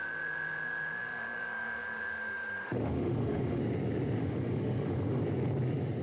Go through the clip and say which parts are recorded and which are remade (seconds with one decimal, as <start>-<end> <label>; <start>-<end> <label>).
0.0-3.6 remade; 3.6-4.2 recorded; 4.2-5.2 remade; 5.2-6.0 recorded